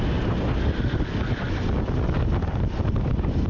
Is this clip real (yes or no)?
yes